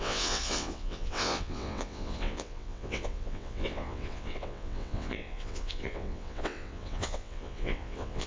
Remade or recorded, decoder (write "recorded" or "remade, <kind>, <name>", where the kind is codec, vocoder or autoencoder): remade, vocoder, WaveNeXt